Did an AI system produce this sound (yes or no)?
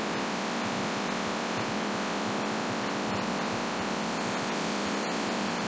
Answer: no